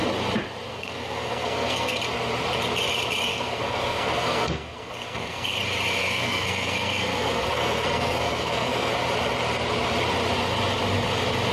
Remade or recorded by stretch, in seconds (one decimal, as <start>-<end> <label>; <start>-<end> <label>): 0.0-0.7 recorded; 0.7-2.0 remade; 2.0-3.3 recorded; 3.3-5.6 remade; 5.6-6.0 recorded; 6.0-8.9 remade; 8.9-11.5 recorded